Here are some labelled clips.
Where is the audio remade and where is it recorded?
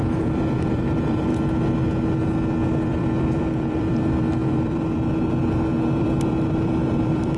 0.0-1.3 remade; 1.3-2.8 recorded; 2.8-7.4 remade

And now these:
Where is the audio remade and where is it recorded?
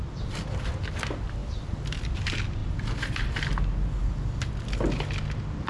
0.0-2.6 recorded; 2.6-3.5 remade; 3.5-5.7 recorded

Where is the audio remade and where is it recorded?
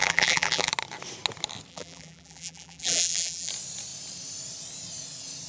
0.0-0.7 remade; 0.7-1.7 recorded; 1.7-3.5 remade; 3.5-5.5 recorded